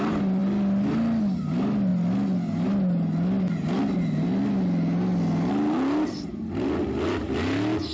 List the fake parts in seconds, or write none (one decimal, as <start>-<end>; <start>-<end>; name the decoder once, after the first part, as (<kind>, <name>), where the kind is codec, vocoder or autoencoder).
none